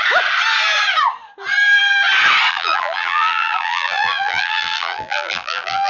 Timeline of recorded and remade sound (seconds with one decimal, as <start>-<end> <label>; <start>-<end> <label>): 0.0-2.5 recorded; 2.5-5.9 remade